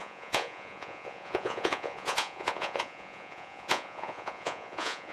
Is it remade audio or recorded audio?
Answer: remade